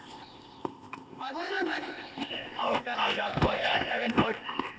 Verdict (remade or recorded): remade